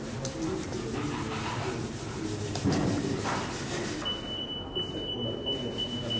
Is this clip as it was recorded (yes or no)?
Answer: yes